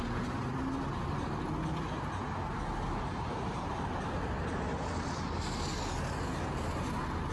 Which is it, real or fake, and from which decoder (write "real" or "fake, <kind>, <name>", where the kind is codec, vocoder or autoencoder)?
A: real